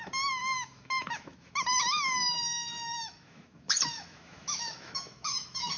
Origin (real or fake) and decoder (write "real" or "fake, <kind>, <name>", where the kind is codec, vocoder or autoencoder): fake, autoencoder, DAC-VAE